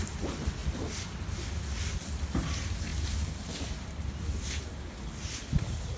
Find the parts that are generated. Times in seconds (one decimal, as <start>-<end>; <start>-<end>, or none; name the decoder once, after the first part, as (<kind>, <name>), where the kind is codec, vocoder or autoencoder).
none